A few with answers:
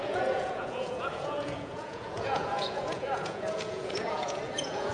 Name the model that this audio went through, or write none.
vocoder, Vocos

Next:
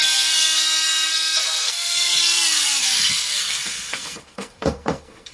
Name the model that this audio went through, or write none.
codec, SNAC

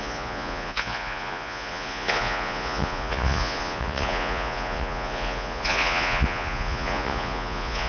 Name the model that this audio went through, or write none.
vocoder, Vocos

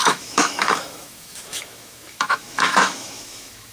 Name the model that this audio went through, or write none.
autoencoder, DAC-VAE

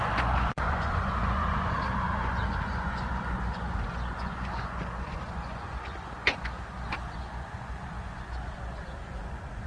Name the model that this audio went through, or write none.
vocoder, Vocos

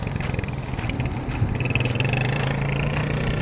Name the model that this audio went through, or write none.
none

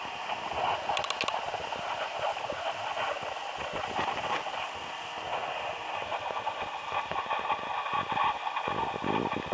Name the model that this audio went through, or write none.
none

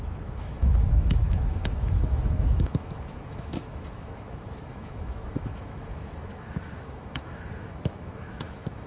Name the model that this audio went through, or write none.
autoencoder, DAC-VAE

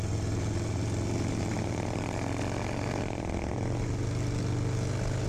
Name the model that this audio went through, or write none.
none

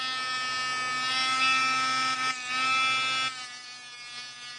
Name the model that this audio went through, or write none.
none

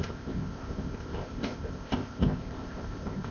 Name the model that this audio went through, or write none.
codec, ZipCodec